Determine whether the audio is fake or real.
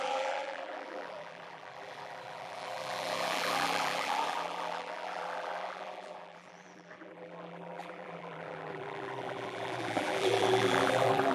fake